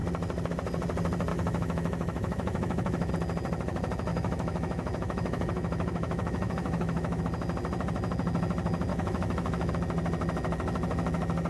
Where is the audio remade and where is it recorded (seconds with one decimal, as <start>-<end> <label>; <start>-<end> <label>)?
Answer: 0.0-1.3 recorded; 1.3-3.1 remade; 3.1-4.1 recorded; 4.1-7.2 remade; 7.2-8.9 recorded; 8.9-9.7 remade; 9.7-11.5 recorded